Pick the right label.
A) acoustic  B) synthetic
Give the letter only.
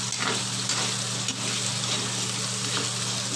A